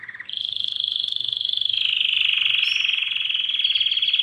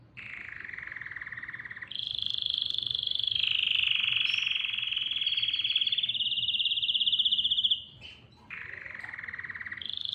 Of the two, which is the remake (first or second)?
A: second